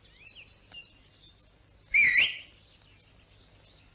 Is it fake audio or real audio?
real